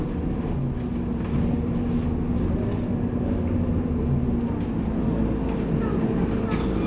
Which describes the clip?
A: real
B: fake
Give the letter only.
A